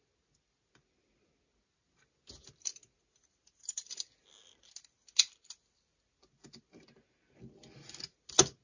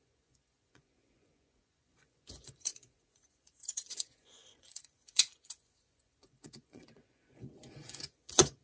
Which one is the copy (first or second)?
second